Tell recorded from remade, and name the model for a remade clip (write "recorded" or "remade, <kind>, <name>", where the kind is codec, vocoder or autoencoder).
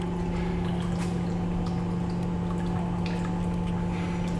recorded